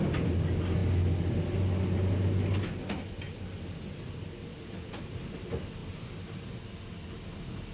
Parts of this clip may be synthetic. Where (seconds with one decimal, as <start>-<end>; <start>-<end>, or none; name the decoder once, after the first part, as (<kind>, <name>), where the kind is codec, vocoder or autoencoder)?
none